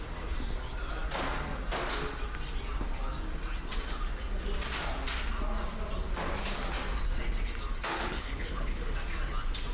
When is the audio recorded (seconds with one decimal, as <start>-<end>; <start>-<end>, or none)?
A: 0.0-8.0; 8.8-9.7